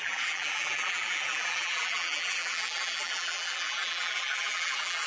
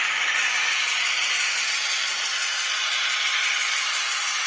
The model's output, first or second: first